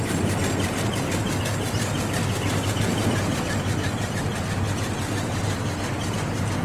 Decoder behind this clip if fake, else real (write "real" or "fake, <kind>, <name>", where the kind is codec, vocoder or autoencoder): real